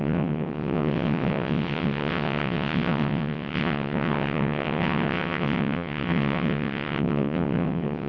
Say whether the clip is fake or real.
fake